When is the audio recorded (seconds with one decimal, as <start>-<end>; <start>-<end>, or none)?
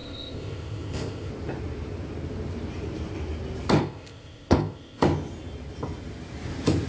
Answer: 1.3-3.8; 5.0-6.9